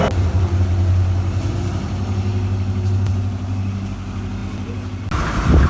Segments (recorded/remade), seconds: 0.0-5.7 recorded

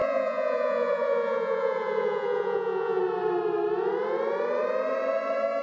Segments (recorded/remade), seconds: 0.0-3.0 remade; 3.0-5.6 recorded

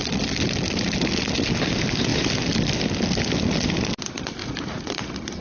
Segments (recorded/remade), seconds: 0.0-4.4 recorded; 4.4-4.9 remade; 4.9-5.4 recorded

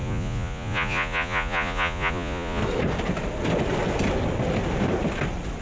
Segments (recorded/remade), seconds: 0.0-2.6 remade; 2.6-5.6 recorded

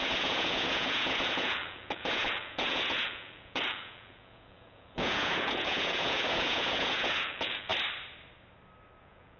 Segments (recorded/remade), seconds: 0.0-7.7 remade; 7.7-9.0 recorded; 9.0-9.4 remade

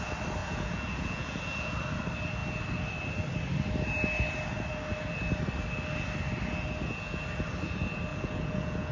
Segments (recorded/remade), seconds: 0.0-0.4 recorded; 0.4-1.4 remade; 1.4-8.1 recorded; 8.1-8.9 remade

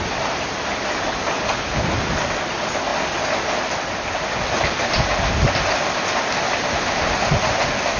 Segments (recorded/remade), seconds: 0.0-8.0 recorded

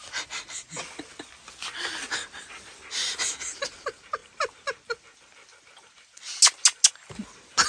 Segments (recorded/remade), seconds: 0.0-7.7 recorded